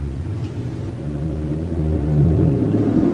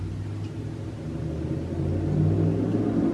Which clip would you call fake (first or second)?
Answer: first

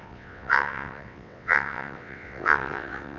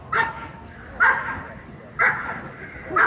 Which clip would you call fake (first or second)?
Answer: first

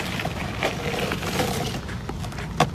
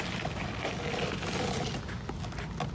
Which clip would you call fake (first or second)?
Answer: first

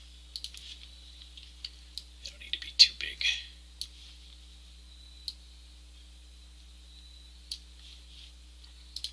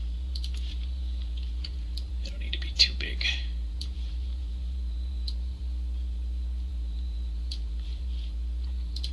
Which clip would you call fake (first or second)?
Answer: second